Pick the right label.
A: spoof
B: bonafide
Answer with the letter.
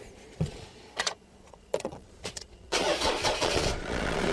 A